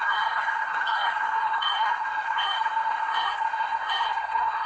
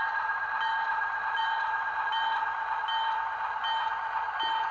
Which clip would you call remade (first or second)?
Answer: first